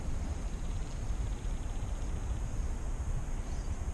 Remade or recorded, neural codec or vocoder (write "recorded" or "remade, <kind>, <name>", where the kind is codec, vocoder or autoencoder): remade, vocoder, BigVGAN v2